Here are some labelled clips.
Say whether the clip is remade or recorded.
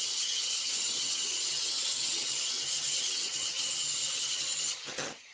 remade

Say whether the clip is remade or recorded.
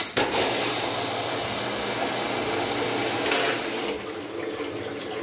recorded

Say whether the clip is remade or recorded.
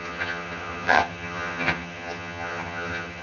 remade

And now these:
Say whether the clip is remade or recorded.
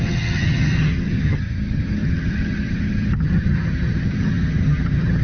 remade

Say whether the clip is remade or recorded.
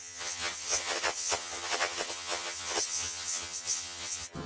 remade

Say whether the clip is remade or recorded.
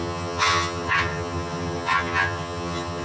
remade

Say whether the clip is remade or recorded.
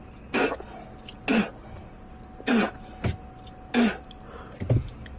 recorded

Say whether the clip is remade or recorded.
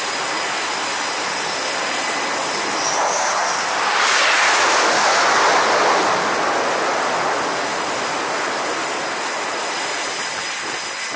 recorded